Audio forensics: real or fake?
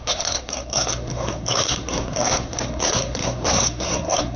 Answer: fake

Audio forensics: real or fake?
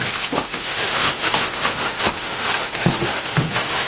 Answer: fake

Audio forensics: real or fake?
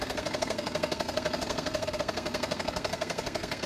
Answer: fake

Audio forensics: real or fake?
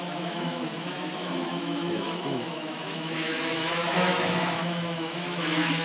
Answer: fake